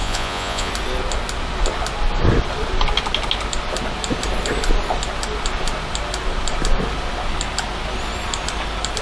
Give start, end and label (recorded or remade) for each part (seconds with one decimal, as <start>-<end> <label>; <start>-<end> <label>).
0.0-0.7 remade; 0.7-9.0 recorded